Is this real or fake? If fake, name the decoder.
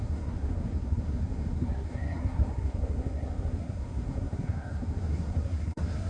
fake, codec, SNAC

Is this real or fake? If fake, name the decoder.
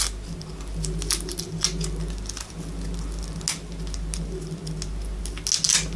real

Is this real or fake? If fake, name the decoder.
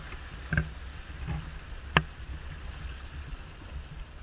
real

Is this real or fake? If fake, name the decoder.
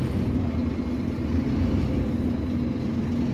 real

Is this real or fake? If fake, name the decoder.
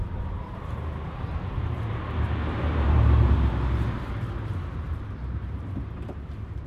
fake, vocoder, BigVGAN v2